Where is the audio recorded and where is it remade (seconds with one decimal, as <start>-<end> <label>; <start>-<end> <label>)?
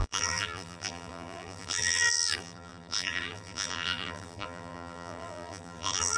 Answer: 0.0-6.2 remade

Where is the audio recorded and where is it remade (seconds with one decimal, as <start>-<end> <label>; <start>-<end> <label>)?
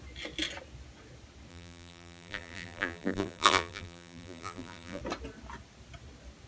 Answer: 0.0-1.5 recorded; 1.5-5.0 remade; 5.0-6.5 recorded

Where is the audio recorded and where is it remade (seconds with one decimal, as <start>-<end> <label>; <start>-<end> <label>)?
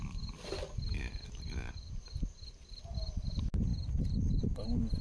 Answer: 0.0-5.0 recorded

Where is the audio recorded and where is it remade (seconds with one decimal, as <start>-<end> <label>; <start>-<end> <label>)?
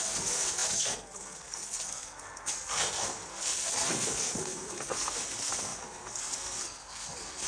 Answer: 0.0-7.5 remade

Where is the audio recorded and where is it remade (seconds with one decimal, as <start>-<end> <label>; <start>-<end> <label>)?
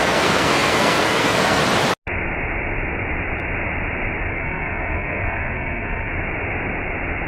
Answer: 0.0-1.6 remade; 1.6-4.3 recorded; 4.3-6.1 remade; 6.1-7.3 recorded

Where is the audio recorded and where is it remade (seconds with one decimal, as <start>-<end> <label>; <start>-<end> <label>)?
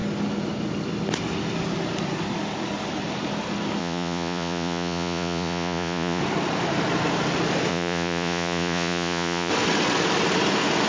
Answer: 0.0-3.8 recorded; 3.8-6.2 remade; 6.2-7.7 recorded; 7.7-9.5 remade; 9.5-10.9 recorded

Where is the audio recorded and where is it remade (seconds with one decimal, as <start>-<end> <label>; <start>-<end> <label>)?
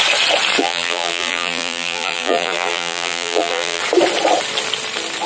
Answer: 0.0-0.6 recorded; 0.6-3.8 remade; 3.8-5.3 recorded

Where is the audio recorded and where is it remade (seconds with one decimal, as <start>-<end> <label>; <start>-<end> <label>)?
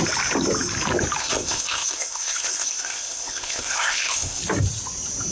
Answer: 0.0-1.2 recorded; 1.2-4.4 remade; 4.4-5.3 recorded